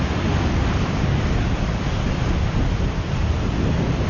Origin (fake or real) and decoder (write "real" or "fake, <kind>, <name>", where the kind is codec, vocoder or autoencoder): real